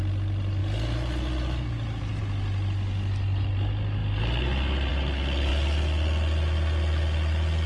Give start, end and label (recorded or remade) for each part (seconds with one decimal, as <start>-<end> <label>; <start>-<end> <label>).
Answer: 0.0-7.7 recorded